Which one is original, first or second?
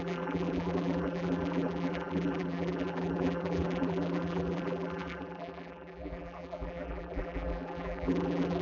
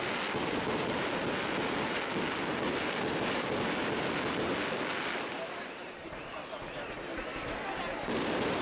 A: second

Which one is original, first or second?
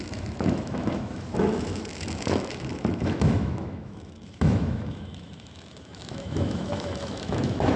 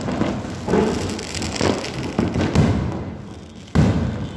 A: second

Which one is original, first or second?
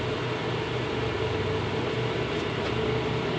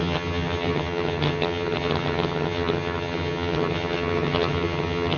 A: first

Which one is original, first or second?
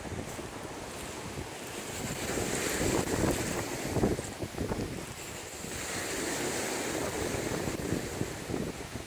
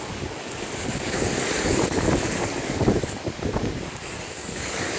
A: first